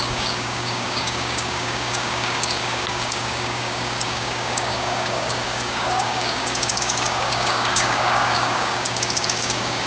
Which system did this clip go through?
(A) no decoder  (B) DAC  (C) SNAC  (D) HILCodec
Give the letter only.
B